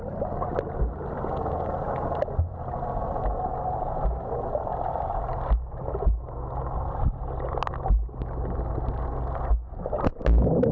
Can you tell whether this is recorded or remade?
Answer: recorded